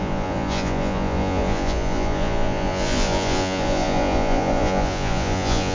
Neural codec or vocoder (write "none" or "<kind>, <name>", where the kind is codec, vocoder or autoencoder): vocoder, Vocos